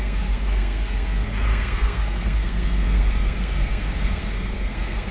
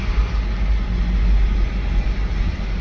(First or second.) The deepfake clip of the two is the first